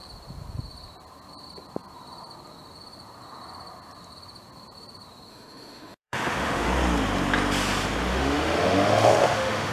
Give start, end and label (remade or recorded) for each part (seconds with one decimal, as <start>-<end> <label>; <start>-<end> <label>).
0.0-5.3 recorded; 5.3-6.7 remade; 6.7-8.1 recorded; 8.1-9.7 remade